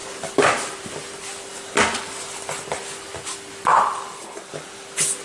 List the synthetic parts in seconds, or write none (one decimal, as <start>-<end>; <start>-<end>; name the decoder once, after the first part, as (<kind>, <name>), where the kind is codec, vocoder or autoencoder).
none

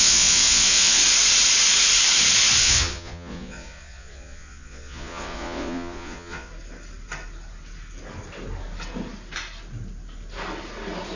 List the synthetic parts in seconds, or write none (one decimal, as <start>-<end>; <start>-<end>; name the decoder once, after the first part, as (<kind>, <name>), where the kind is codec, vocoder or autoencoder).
0.0-1.0 (vocoder, Vocos); 2.6-6.5

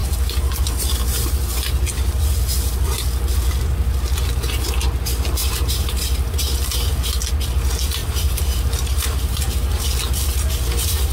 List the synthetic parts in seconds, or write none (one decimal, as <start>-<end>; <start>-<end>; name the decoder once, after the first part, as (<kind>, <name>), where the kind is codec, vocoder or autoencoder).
5.4-6.9 (vocoder, BigVGAN v2); 8.0-9.8

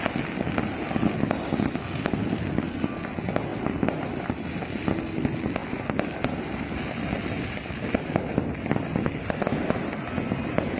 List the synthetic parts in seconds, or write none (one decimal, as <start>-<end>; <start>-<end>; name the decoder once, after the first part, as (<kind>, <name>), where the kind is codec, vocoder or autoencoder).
none

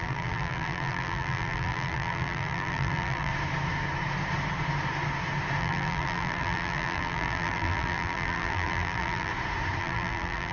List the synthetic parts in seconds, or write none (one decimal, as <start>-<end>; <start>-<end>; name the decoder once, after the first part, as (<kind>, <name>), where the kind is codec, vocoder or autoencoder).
0.0-3.3 (vocoder, BigVGAN v2); 5.6-9.3; 9.8-10.5

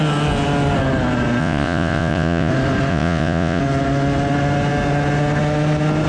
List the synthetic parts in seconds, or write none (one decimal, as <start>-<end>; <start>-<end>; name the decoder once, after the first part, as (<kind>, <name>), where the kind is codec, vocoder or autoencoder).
1.4-2.5 (vocoder, Vocos); 2.9-3.6

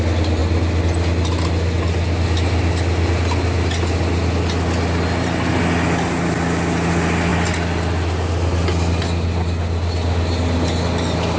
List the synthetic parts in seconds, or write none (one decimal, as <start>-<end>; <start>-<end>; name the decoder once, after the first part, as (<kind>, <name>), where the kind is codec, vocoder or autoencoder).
none